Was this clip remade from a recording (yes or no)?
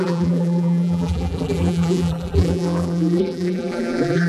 yes